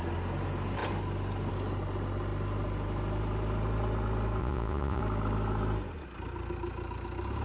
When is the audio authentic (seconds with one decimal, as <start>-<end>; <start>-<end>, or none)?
0.0-4.4; 5.0-7.4